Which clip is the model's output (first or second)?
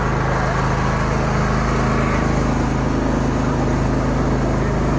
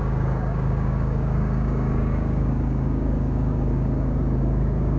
second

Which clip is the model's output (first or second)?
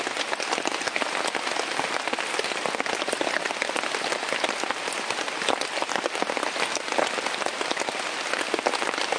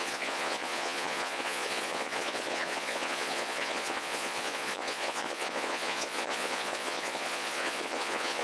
second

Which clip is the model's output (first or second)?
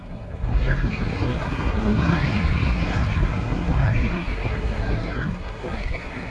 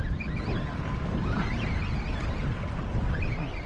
first